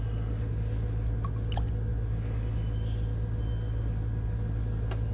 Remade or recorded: recorded